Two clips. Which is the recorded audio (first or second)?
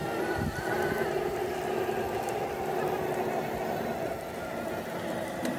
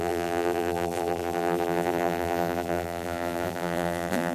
first